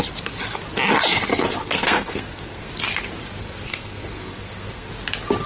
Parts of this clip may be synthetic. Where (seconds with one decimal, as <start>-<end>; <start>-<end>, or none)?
1.6-2.7; 3.4-4.9